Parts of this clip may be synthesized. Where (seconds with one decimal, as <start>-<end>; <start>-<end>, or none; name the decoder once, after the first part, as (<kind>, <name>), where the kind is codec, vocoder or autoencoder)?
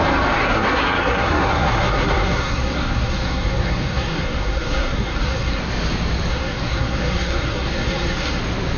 0.4-5.6 (codec, SNAC); 6.3-8.4